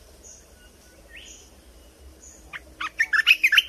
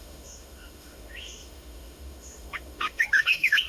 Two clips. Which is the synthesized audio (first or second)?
second